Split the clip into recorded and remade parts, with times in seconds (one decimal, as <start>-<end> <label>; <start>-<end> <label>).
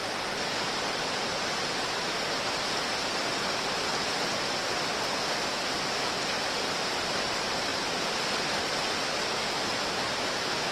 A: 0.0-7.7 recorded; 7.7-8.8 remade; 8.8-10.7 recorded